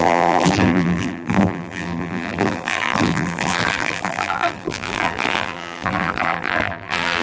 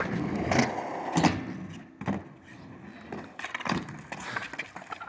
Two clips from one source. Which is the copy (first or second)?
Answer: first